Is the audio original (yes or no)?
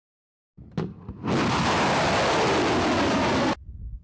yes